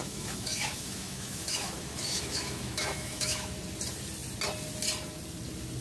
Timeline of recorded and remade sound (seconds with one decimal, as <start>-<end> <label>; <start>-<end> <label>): 0.0-3.5 remade; 3.5-5.8 recorded